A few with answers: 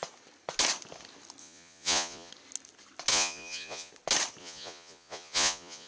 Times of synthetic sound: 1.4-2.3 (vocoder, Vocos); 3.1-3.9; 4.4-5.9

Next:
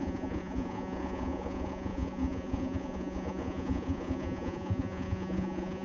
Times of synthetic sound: 0.0-5.8 (vocoder, Vocos)

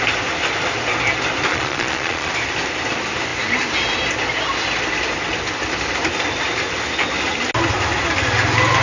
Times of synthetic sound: 1.5-2.3 (vocoder, Vocos)

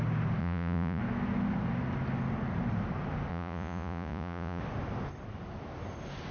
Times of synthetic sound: 0.4-1.0 (vocoder, Vocos); 3.3-4.6